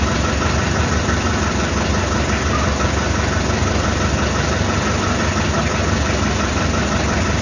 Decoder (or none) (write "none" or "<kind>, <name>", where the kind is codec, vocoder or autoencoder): none